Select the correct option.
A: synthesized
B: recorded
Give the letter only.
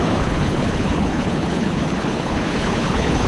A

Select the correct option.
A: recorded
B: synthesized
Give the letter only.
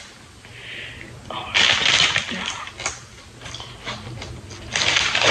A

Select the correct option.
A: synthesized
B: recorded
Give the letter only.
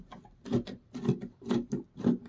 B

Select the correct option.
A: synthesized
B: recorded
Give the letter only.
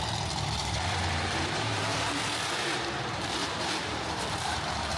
A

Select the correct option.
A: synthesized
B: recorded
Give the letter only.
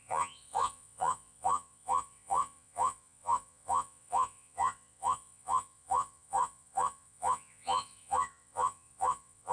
A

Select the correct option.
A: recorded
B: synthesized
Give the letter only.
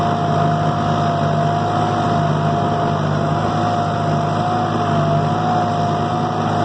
A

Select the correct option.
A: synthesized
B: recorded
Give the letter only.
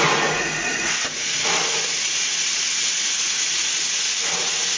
A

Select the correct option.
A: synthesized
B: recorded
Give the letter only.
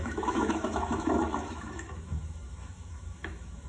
A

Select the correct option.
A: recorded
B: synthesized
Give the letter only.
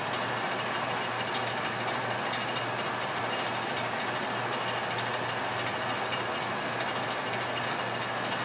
A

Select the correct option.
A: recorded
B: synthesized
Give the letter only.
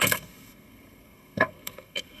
B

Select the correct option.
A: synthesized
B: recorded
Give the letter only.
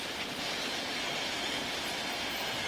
B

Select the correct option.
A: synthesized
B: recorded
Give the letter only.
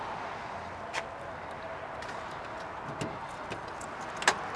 B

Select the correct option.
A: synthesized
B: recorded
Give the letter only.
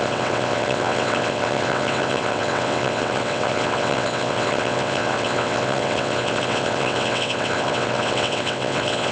A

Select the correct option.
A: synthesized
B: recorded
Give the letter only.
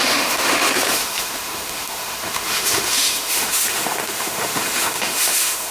A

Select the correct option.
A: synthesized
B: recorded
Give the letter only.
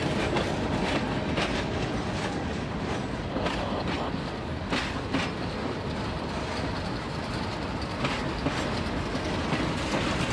B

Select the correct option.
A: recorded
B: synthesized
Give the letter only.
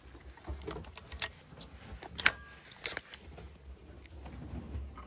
A